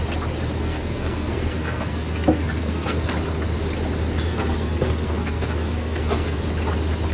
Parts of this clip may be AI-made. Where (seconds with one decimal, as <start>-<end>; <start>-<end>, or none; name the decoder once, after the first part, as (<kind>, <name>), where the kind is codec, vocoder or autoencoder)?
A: 0.6-3.1 (codec, SNAC); 4.3-6.4